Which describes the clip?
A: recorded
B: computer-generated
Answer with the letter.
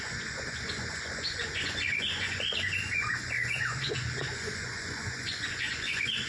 B